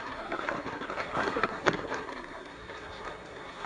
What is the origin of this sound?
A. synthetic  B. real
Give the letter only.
A